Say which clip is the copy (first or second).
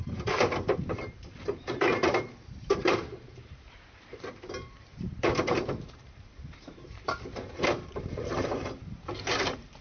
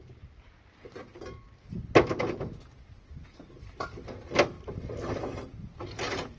first